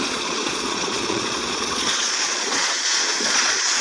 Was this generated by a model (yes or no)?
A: yes